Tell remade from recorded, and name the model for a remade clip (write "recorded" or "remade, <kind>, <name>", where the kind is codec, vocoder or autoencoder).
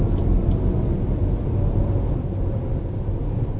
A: recorded